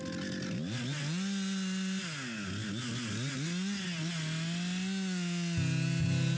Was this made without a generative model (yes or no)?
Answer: yes